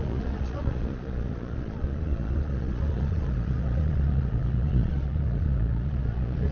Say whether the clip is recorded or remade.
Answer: remade